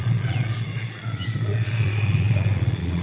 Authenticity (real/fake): fake